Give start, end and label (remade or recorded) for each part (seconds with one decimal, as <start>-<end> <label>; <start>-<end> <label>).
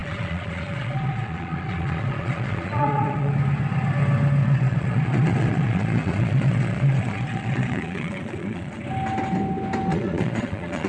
0.0-3.3 remade; 3.3-4.4 recorded; 4.4-8.8 remade; 8.8-9.9 recorded; 9.9-10.9 remade